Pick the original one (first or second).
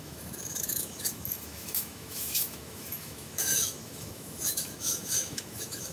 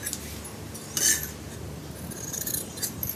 second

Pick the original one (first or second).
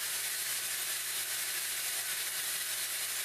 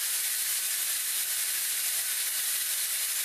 first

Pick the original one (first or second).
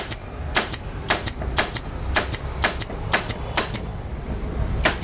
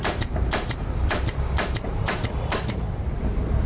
first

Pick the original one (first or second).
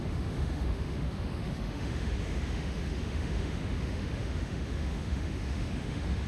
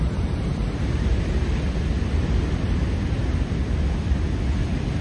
second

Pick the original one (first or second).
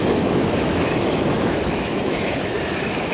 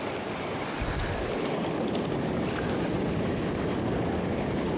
second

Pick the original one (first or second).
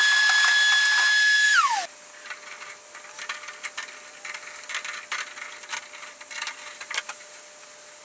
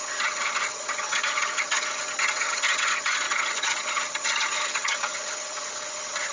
first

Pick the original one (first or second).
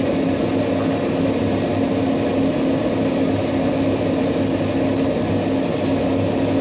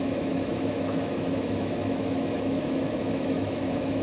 first